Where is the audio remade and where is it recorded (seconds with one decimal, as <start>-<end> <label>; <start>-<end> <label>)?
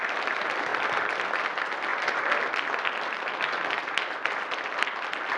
0.0-0.7 recorded; 0.7-1.4 remade; 1.4-5.4 recorded